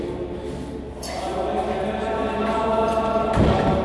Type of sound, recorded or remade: recorded